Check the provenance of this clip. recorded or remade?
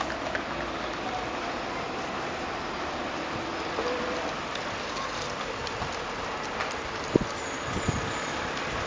recorded